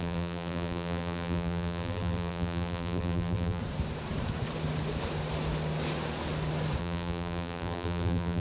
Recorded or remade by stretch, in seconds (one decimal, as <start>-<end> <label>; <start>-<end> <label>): 0.0-3.6 remade; 3.6-6.8 recorded; 6.8-8.4 remade